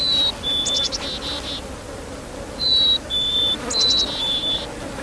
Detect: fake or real real